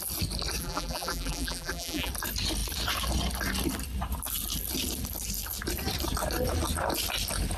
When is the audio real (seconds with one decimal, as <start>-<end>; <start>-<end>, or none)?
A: 0.0-0.6; 2.1-7.6

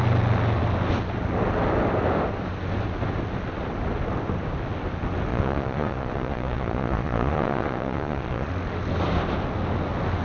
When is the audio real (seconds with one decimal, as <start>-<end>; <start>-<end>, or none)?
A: 0.0-5.3; 8.5-10.2

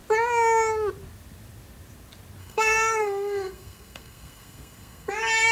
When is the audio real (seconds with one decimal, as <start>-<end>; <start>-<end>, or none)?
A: 0.0-2.4; 5.1-5.5

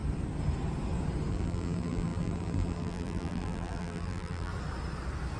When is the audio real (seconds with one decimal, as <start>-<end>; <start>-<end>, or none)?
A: 0.0-1.3; 4.5-5.4

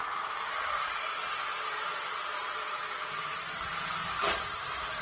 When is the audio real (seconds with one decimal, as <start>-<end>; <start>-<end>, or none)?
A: 0.0-5.0

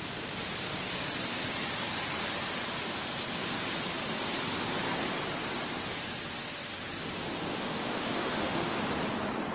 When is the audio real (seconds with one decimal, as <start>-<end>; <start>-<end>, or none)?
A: 0.0-7.5; 8.8-9.5

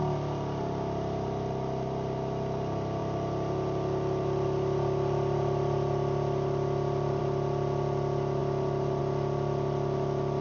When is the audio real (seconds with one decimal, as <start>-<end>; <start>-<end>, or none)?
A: 0.0-10.4

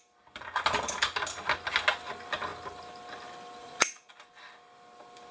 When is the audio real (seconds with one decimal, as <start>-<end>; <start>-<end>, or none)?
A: 0.0-3.6; 4.1-5.3